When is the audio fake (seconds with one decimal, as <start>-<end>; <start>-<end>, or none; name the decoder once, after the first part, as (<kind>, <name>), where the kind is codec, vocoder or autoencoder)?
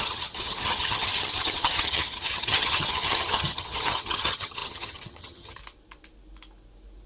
0.0-5.6 (vocoder, HiFi-GAN)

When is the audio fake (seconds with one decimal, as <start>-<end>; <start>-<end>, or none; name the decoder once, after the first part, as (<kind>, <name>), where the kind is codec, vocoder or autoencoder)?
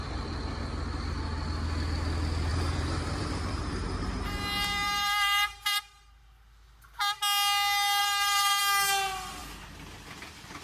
2.5-5.8 (vocoder, BigVGAN v2); 8.0-8.6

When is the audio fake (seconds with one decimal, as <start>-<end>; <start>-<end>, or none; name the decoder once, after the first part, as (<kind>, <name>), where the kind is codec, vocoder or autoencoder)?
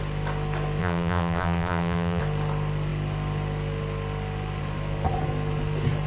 0.8-2.2 (vocoder, BigVGAN v2)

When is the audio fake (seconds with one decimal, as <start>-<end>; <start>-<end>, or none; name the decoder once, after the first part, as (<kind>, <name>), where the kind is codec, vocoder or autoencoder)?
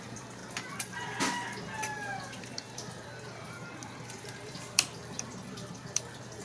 0.0-0.4 (vocoder, BigVGAN v2); 2.4-6.4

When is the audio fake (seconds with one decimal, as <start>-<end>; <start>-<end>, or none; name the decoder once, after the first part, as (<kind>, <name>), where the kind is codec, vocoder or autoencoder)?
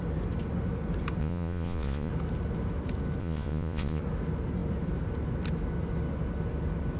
1.2-2.1 (vocoder, Vocos); 3.2-4.0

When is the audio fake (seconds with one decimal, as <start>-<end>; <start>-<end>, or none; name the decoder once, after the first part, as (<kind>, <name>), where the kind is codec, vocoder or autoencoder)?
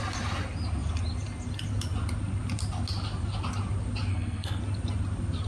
4.1-4.6 (codec, SNAC)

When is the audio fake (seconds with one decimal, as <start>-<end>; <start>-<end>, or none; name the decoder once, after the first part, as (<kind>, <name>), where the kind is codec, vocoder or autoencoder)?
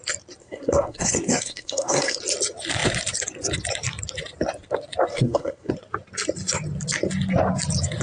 0.4-2.2 (codec, SNAC); 5.1-5.7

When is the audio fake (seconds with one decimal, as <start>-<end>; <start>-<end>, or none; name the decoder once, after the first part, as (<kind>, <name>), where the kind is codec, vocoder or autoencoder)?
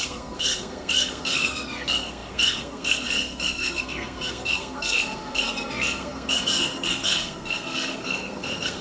0.0-8.8 (codec, SNAC)